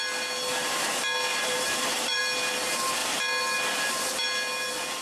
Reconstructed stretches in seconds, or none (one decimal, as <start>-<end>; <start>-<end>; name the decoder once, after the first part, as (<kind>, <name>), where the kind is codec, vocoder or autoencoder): 1.3-2.2 (vocoder, BigVGAN v2)